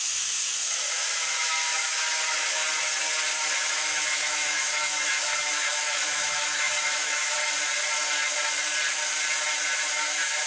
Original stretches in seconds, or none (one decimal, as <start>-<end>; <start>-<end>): 2.6-3.5; 7.4-9.5